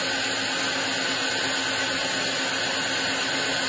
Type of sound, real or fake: real